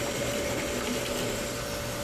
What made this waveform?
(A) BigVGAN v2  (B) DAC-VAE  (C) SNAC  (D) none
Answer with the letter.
A